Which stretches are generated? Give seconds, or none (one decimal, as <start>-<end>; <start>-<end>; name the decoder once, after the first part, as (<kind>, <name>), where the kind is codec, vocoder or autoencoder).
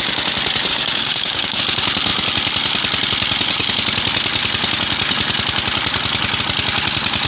0.7-1.6 (codec, DAC)